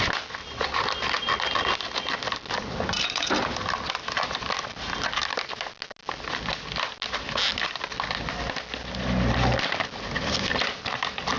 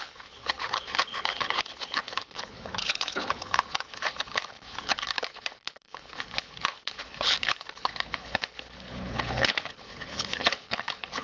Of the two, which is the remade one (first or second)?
second